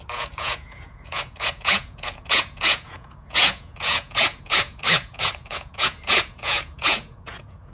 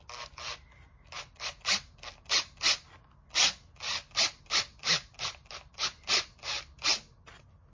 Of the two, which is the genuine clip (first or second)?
second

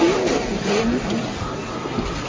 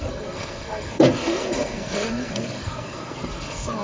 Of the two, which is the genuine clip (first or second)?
first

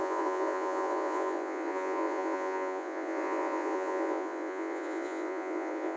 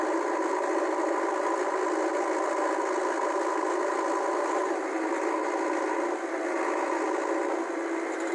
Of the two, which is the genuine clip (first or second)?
second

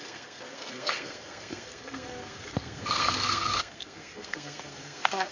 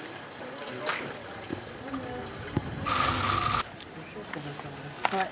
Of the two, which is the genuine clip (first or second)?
second